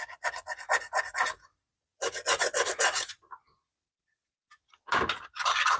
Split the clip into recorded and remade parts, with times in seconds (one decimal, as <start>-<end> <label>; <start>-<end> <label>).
0.0-5.8 recorded